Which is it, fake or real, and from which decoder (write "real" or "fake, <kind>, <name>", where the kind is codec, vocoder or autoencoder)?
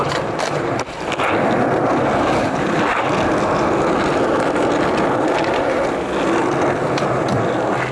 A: real